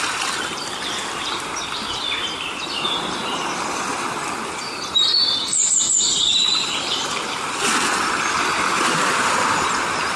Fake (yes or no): yes